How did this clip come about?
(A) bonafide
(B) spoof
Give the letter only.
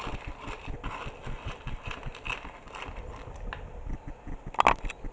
A